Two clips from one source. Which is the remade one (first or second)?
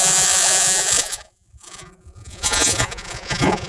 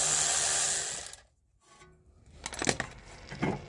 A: first